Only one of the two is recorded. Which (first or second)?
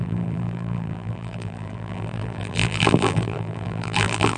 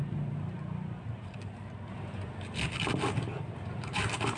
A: second